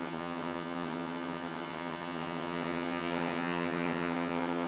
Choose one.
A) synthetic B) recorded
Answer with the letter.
A